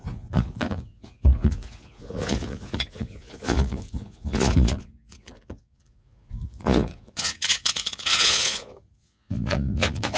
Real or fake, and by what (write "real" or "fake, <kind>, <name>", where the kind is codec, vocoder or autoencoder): fake, vocoder, Vocos